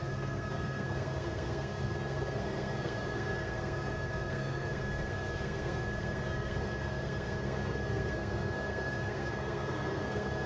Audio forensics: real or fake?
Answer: fake